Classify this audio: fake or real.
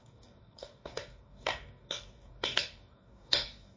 fake